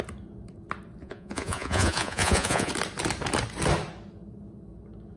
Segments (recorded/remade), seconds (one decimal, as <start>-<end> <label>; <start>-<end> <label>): 0.0-1.0 recorded; 1.0-2.7 remade; 2.7-5.2 recorded